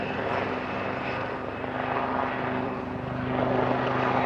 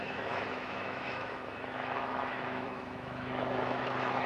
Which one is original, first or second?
first